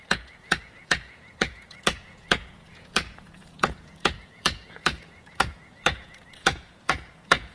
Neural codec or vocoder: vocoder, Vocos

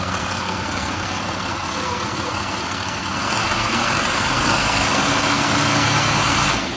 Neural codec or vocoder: codec, SNAC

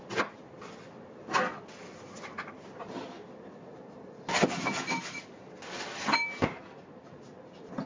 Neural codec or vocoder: none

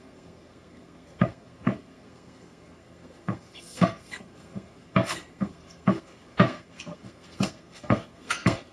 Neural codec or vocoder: codec, SNAC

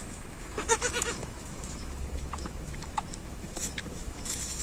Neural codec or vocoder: autoencoder, DAC-VAE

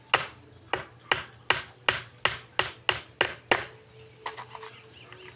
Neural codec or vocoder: none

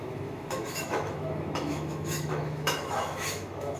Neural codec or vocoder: autoencoder, DAC-VAE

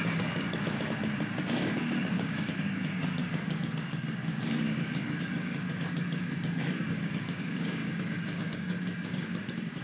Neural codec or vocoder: codec, DAC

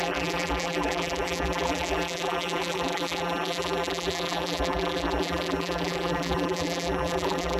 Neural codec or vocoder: vocoder, BigVGAN v2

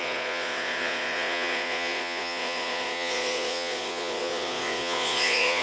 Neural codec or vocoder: vocoder, Vocos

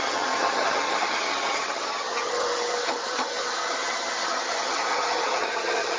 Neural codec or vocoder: vocoder, HiFi-GAN